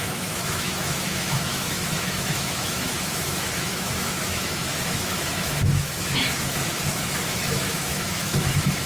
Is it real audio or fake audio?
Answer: fake